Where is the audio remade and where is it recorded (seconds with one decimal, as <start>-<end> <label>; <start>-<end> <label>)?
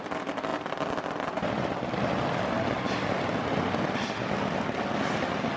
0.0-5.6 recorded